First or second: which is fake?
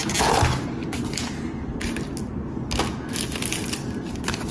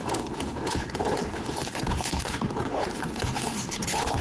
second